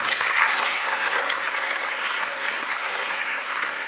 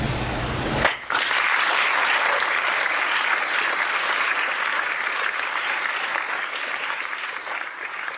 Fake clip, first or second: first